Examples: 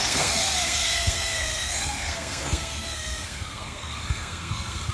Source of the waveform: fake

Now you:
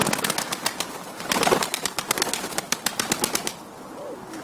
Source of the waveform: real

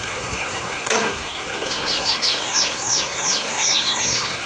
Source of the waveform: fake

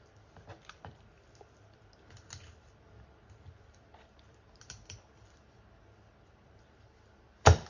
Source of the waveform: real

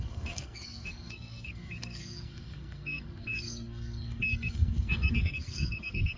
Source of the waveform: fake